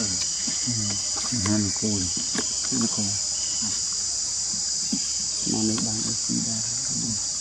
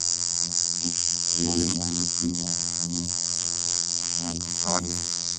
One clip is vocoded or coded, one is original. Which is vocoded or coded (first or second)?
second